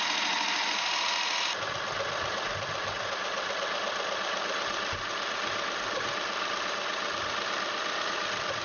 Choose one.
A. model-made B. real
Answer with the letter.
B